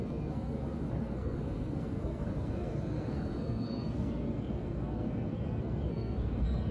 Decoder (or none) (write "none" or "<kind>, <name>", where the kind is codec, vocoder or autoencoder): codec, SNAC